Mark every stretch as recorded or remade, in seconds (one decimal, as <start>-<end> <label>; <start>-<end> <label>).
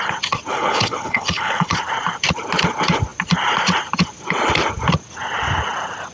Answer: 0.0-0.5 recorded; 0.5-1.7 remade; 1.7-6.1 recorded